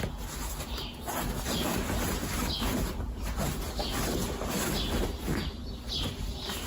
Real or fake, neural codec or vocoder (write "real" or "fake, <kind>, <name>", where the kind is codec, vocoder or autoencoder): real